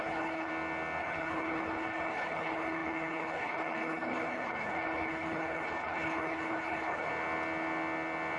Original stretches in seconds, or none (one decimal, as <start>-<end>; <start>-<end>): 0.5-1.0; 7.1-8.4

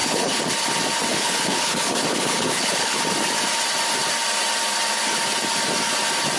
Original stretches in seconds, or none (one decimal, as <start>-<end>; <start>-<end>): 0.5-1.1; 3.0-6.4